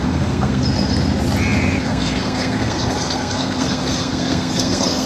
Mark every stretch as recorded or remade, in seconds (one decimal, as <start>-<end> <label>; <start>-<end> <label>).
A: 0.0-0.6 remade; 0.6-1.8 recorded; 1.8-5.1 remade